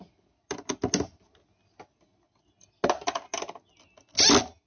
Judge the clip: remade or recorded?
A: recorded